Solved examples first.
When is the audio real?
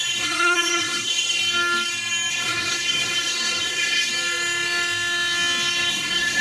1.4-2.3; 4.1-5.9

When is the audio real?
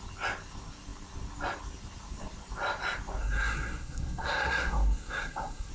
0.0-3.2